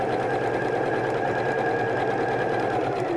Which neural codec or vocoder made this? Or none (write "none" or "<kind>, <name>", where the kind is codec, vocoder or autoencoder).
vocoder, BigVGAN v2